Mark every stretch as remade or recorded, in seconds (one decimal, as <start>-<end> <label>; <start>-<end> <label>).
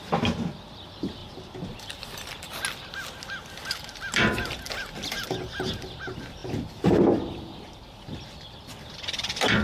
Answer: 0.0-1.2 recorded; 1.2-2.3 remade; 2.3-4.5 recorded; 4.5-5.3 remade; 5.3-9.6 recorded